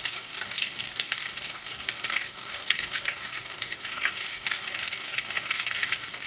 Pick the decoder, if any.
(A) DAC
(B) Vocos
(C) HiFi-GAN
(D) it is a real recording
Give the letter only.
A